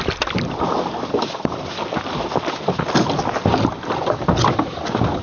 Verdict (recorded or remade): recorded